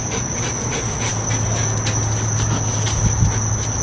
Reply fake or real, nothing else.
real